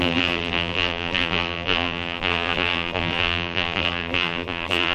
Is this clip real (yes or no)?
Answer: no